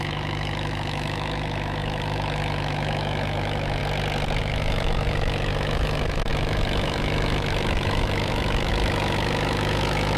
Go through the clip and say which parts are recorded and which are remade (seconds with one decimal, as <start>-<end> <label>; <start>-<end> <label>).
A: 0.0-3.8 remade; 3.8-4.4 recorded; 4.4-10.2 remade